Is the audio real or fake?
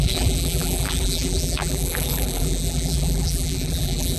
fake